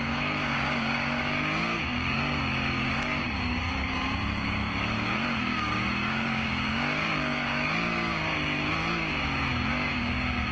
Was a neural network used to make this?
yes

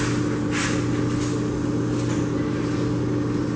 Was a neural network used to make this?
no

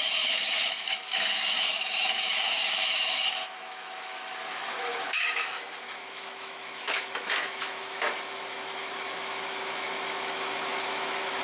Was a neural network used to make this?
yes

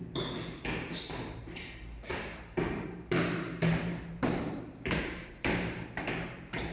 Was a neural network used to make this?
yes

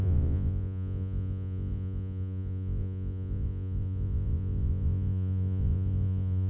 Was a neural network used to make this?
yes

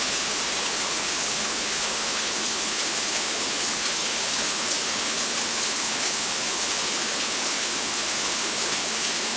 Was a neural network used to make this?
yes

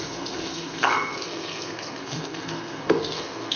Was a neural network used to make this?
yes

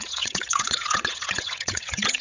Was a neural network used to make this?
yes